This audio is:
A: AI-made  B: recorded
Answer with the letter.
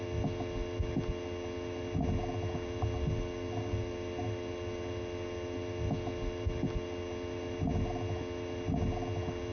B